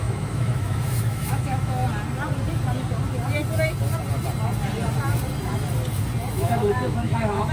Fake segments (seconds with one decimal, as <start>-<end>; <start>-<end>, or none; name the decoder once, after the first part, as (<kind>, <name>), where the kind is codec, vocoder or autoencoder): 0.0-1.8 (autoencoder, DAC-VAE); 6.3-7.5

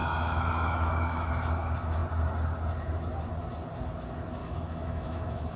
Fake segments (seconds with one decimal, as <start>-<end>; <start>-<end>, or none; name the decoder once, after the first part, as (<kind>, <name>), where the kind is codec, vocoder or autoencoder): 0.0-1.3 (autoencoder, DAC-VAE); 4.4-5.6

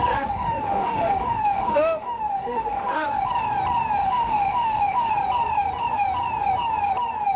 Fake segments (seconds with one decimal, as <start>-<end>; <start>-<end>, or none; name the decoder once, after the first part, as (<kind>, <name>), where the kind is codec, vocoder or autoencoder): 0.0-3.3 (autoencoder, DAC-VAE); 4.0-5.1

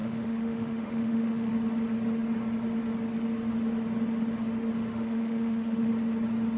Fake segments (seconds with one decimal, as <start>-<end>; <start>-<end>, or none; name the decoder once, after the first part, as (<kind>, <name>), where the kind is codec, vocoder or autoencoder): 0.0-1.5 (autoencoder, DAC-VAE); 4.9-5.9

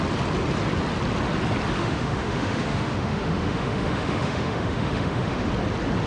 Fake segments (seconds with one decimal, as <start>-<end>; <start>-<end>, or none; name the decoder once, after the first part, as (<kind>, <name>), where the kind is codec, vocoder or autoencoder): 1.8-5.5 (autoencoder, DAC-VAE)

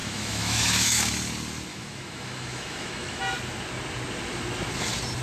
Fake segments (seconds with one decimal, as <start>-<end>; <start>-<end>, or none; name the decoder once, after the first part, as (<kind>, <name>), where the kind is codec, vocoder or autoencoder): 0.0-1.1 (autoencoder, DAC-VAE); 1.7-3.2